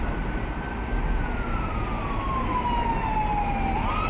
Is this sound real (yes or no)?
yes